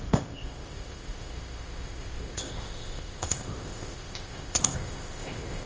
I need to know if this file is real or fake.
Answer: fake